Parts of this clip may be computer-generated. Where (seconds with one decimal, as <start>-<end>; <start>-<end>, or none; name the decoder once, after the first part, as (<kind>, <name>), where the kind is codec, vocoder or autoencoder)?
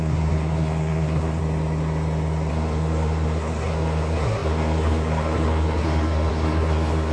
0.0-1.4 (codec, SNAC); 2.5-7.1